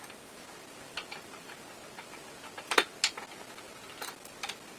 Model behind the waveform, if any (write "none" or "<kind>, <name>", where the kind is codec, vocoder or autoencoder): none